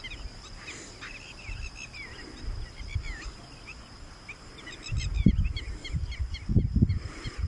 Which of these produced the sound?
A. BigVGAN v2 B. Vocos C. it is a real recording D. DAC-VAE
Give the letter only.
C